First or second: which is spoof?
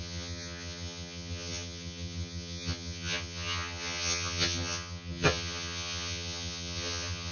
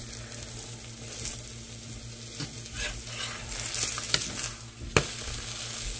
first